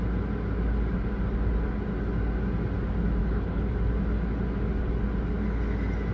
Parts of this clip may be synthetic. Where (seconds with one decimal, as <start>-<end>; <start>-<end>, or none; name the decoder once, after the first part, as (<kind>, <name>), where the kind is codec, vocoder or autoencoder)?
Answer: 3.2-3.7 (codec, HILCodec)